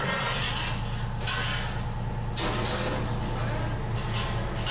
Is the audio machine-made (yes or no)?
no